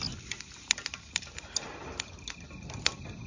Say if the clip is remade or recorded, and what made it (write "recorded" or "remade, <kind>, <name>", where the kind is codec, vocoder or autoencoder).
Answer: recorded